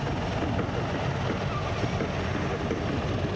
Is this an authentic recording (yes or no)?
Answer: yes